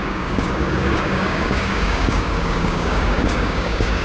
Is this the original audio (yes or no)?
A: no